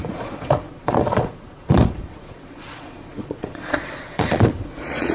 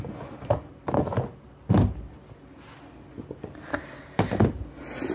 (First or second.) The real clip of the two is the second